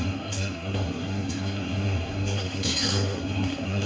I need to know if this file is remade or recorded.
remade